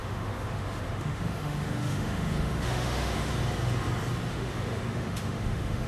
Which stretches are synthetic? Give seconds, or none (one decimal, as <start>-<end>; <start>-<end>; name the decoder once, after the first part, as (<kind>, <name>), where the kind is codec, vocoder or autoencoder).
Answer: 0.0-3.3 (autoencoder, DAC-VAE); 4.3-5.9